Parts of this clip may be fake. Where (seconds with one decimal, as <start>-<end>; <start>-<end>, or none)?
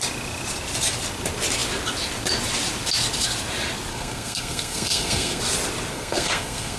3.9-5.4; 5.9-6.8